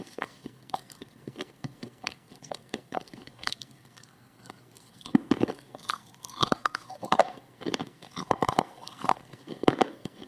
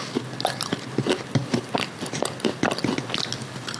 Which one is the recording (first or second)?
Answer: second